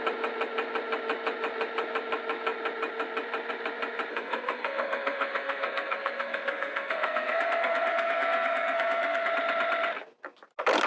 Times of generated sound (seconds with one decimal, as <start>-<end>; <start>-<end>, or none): 4.1-9.3

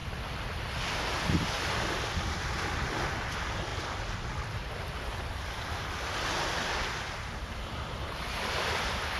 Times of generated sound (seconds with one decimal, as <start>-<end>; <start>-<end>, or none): none

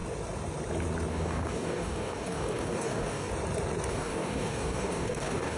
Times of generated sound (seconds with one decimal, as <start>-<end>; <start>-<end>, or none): 1.1-3.3; 3.9-5.6

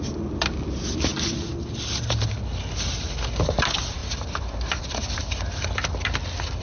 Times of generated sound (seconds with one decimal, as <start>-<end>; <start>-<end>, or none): 0.0-1.1; 3.4-6.6

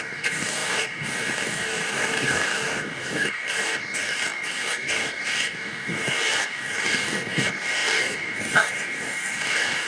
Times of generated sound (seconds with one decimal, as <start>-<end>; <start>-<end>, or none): 0.0-9.9

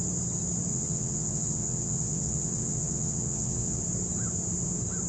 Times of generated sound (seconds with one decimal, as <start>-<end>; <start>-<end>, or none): 0.7-3.8

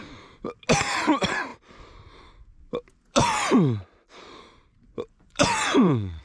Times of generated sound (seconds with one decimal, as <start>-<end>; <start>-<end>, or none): 4.9-6.2

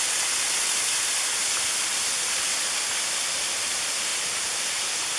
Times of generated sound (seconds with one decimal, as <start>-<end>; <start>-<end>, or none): 4.1-5.2